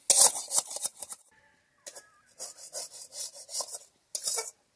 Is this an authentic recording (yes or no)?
yes